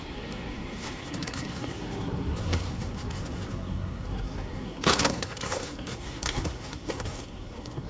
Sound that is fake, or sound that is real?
fake